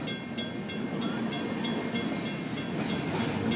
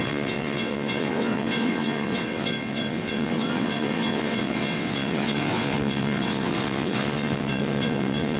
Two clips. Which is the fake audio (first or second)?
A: second